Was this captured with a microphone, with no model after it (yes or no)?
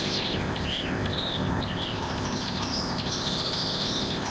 no